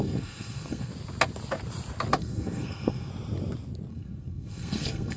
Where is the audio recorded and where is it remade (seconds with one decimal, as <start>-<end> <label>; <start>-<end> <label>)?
0.0-0.9 remade; 0.9-2.2 recorded; 2.2-3.1 remade; 3.1-3.9 recorded; 3.9-5.2 remade